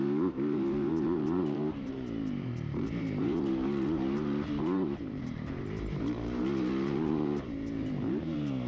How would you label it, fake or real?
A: fake